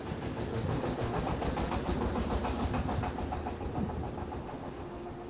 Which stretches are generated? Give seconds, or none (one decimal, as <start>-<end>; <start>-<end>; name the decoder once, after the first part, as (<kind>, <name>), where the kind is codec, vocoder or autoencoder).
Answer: 0.5-1.2 (autoencoder, DAC-VAE); 4.4-5.3